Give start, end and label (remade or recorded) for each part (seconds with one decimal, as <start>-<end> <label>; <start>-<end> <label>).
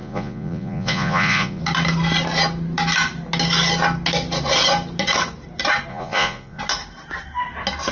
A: 0.0-1.6 remade; 1.6-5.9 recorded; 5.9-6.6 remade; 6.6-7.9 recorded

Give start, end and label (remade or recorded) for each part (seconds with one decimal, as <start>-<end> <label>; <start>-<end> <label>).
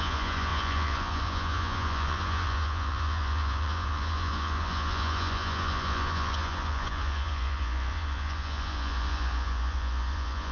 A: 0.0-10.5 remade